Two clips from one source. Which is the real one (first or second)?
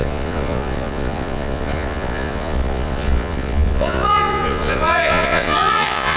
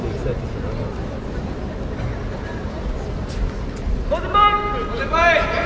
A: second